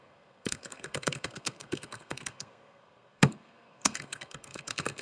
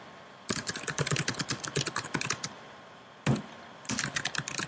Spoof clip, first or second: first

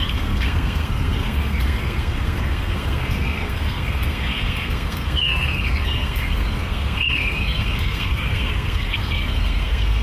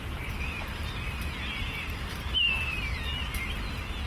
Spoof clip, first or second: first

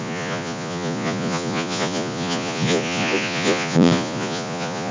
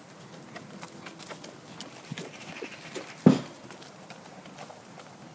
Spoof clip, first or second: first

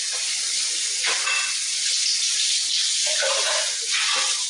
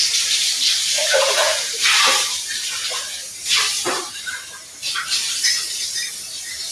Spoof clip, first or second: second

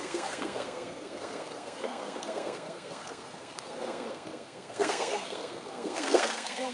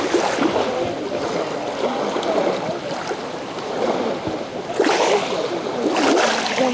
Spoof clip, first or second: first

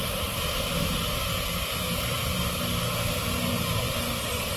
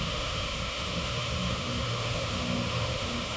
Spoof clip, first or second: second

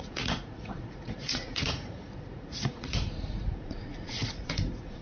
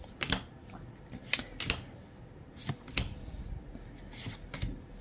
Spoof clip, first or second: first